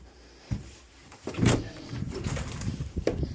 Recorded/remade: remade